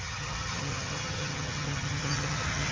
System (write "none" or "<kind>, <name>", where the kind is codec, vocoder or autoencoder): vocoder, HiFi-GAN